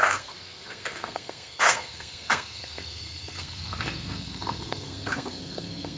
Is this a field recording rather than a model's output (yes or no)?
no